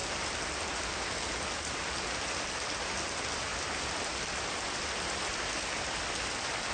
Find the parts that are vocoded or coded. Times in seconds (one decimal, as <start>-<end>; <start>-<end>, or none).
none